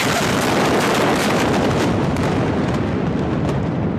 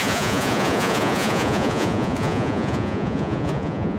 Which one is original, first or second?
first